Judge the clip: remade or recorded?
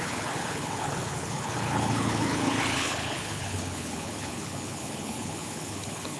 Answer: remade